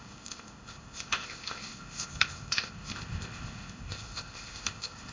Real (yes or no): no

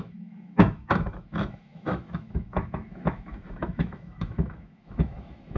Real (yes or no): no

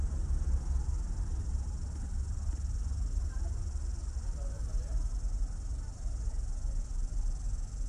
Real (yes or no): yes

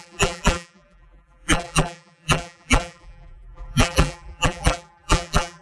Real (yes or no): no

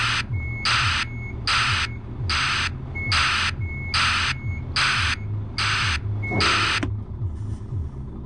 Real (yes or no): yes